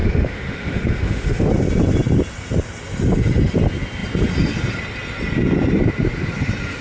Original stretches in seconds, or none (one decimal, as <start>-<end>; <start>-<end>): 1.5-6.8